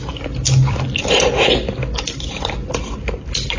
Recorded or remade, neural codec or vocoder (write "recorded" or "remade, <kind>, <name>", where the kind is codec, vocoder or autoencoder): recorded